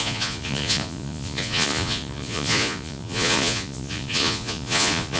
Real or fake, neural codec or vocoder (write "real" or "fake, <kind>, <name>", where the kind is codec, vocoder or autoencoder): fake, vocoder, Vocos